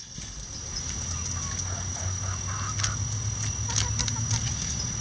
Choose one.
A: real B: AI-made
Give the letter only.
A